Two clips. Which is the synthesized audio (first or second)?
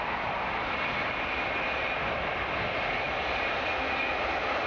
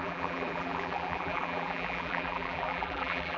second